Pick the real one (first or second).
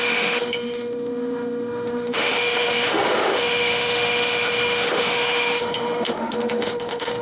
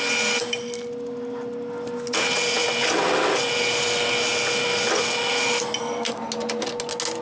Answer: second